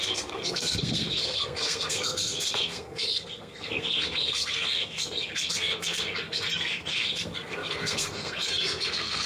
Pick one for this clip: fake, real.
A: fake